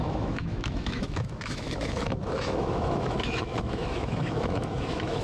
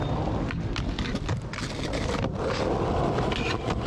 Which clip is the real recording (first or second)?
second